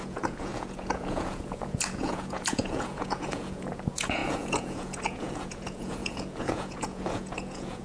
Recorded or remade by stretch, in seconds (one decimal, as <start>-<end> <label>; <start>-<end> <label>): 0.0-7.8 remade